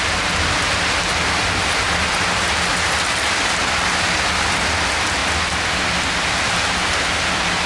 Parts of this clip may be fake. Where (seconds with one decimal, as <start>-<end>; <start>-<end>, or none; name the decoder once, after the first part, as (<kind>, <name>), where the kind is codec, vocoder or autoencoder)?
none